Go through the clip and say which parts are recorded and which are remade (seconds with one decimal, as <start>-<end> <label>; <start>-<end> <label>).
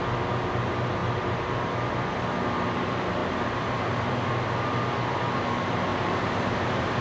0.0-1.0 recorded; 1.0-1.9 remade; 1.9-3.2 recorded; 3.2-4.1 remade; 4.1-5.9 recorded; 5.9-7.0 remade